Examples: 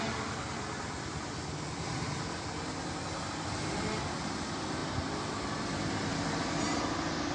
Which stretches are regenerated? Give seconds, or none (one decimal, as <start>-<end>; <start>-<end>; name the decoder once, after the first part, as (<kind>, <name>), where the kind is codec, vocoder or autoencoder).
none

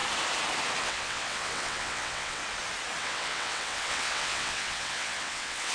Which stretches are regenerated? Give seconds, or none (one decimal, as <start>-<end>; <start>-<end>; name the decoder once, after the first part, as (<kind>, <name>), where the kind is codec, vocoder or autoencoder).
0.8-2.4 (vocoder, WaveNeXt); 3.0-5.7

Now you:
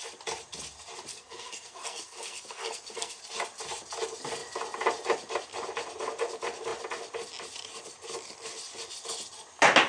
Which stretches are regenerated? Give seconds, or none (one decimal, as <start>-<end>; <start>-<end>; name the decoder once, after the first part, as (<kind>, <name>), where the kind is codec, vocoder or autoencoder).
1.1-3.2 (codec, SNAC)

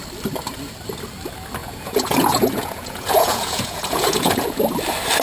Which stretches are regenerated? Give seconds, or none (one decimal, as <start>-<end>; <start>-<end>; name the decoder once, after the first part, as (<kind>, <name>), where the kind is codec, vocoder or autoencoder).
1.6-4.6 (vocoder, Vocos)